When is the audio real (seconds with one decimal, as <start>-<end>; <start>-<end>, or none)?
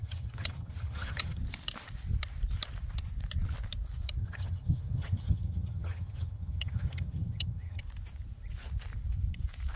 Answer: 1.4-4.2; 7.8-9.8